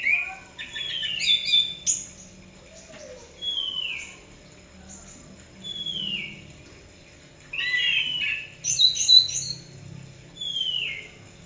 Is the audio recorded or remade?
recorded